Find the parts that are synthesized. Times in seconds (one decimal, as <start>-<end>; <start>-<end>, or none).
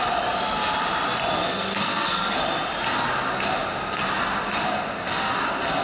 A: 1.4-2.4